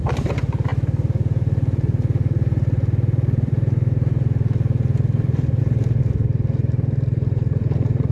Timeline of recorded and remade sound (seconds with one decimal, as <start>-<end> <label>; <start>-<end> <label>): 0.0-8.1 remade